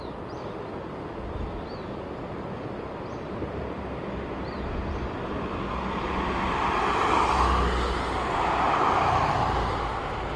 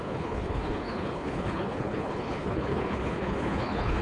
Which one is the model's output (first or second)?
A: second